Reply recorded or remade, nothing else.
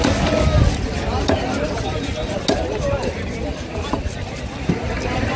recorded